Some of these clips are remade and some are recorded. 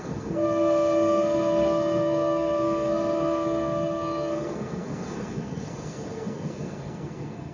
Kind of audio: remade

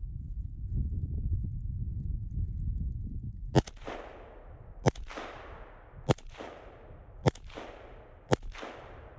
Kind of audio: recorded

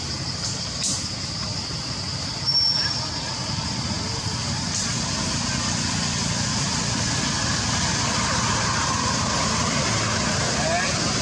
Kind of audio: recorded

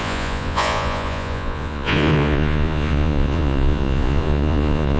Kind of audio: remade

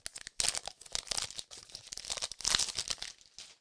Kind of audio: recorded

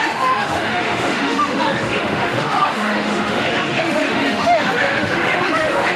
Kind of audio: remade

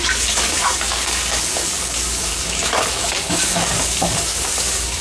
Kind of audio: remade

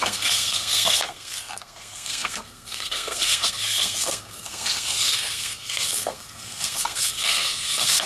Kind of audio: remade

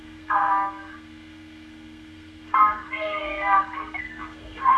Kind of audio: remade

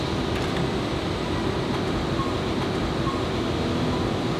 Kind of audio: recorded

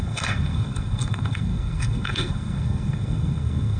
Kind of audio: remade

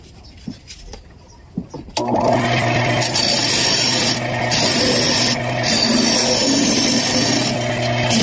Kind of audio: recorded